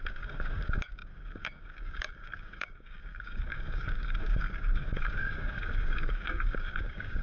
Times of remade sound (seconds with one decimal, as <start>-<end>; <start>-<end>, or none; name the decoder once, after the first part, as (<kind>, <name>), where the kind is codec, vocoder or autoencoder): 0.0-7.2 (codec, DAC)